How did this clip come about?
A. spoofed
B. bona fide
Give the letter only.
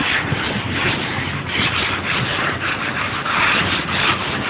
A